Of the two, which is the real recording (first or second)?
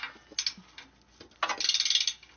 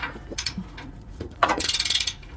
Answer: first